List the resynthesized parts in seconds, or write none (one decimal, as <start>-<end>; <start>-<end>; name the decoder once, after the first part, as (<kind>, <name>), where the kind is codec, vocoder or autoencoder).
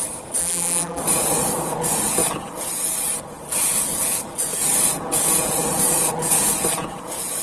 0.4-1.0 (vocoder, BigVGAN v2)